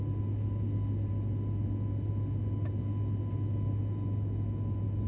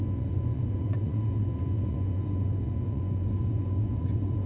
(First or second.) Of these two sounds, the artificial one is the second